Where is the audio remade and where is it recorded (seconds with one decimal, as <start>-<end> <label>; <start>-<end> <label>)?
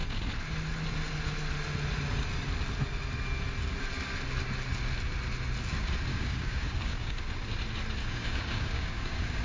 0.0-6.1 recorded; 6.1-7.2 remade; 7.2-8.0 recorded; 8.0-9.4 remade